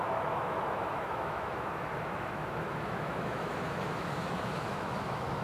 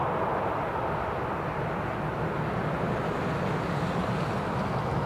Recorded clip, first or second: second